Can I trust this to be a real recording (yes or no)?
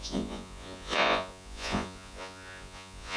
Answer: no